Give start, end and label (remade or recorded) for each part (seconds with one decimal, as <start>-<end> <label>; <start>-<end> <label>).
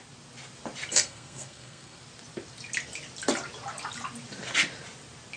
0.0-0.9 recorded; 0.9-2.0 remade; 2.0-5.4 recorded